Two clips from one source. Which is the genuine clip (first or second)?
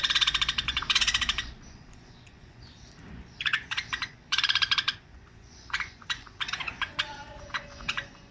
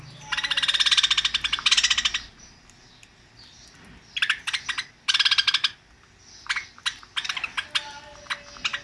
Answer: second